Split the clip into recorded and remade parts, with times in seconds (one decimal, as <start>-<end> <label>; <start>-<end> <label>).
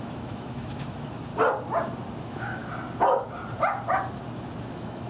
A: 0.0-1.3 remade; 1.3-2.2 recorded; 2.2-2.6 remade; 2.6-4.6 recorded; 4.6-5.1 remade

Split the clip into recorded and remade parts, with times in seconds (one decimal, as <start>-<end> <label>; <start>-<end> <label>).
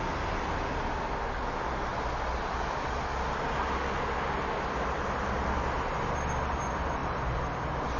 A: 0.0-7.0 recorded; 7.0-8.0 remade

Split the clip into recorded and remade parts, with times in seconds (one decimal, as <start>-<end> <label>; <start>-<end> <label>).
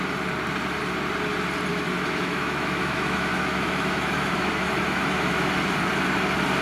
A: 0.0-1.7 recorded; 1.7-5.5 remade; 5.5-6.6 recorded